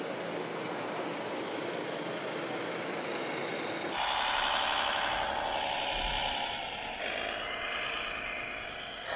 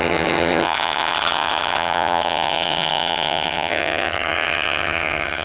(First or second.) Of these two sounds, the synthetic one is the second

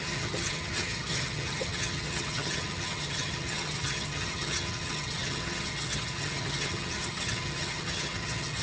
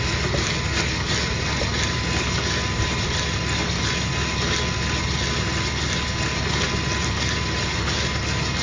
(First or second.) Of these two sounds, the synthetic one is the first